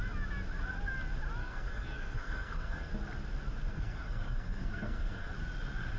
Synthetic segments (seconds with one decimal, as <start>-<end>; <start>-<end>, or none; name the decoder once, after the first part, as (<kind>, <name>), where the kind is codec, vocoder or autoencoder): 1.4-2.9 (codec, SNAC); 3.7-5.3